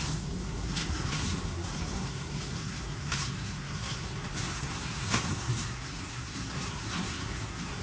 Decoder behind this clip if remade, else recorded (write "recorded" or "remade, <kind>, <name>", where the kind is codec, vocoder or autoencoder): remade, codec, SNAC